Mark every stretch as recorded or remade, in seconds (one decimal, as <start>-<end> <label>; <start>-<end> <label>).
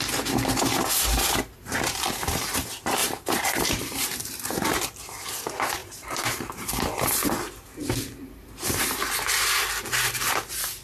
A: 0.0-3.0 recorded; 3.0-4.5 remade; 4.5-5.8 recorded; 5.8-6.6 remade; 6.6-7.8 recorded; 7.8-8.8 remade; 8.8-10.8 recorded